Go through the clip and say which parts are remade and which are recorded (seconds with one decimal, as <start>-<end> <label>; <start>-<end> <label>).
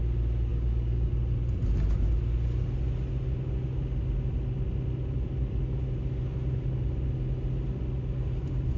0.0-0.5 recorded; 0.5-1.1 remade; 1.1-8.8 recorded